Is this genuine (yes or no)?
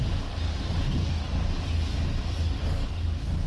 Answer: yes